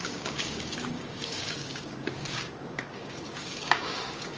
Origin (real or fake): fake